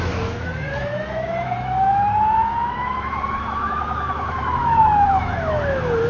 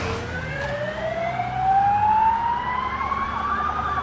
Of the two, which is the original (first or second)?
second